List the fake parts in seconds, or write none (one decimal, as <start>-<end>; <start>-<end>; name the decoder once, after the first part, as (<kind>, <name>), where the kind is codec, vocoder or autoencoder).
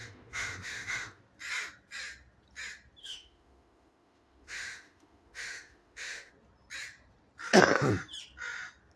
0.0-1.2 (autoencoder, DAC-VAE); 3.0-6.3